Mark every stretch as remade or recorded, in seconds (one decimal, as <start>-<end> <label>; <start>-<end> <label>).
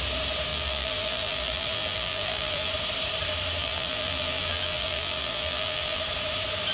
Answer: 0.0-0.5 recorded; 0.5-2.7 remade; 2.7-3.6 recorded; 3.6-6.0 remade; 6.0-6.7 recorded